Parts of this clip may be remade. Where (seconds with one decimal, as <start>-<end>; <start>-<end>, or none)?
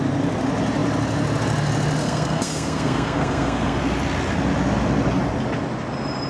2.0-3.8